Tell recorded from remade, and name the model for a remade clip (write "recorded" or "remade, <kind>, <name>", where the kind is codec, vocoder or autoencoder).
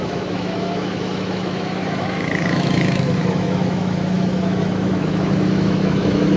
remade, autoencoder, DAC-VAE